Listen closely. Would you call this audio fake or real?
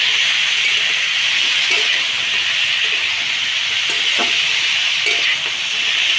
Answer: real